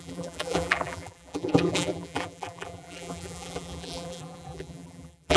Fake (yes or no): yes